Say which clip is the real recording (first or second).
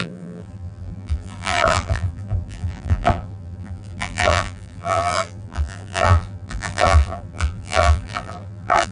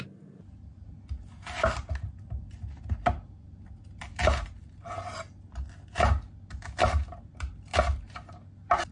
second